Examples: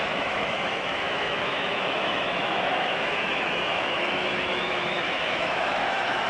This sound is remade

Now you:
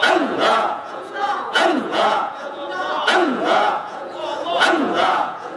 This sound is remade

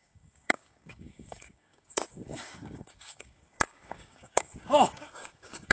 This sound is remade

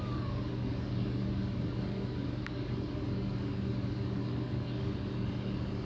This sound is remade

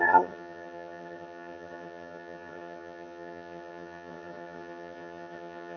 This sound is remade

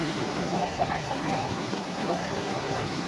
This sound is remade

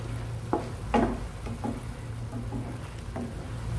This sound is recorded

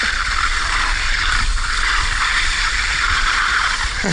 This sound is remade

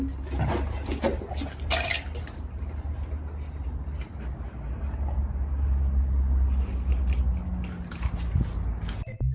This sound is recorded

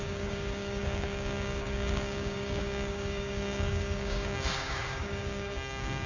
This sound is remade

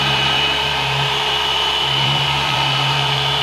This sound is remade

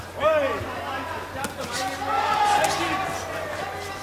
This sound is recorded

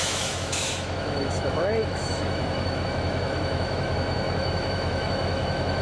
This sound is remade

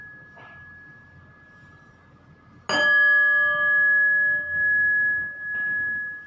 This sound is recorded